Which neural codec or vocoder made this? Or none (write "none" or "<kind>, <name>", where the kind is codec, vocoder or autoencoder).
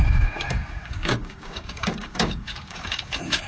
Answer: codec, DAC